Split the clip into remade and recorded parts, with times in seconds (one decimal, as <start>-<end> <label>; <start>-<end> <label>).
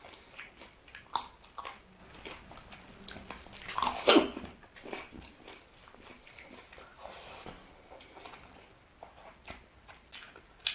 0.0-10.7 recorded